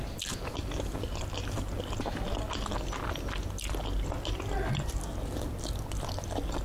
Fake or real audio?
real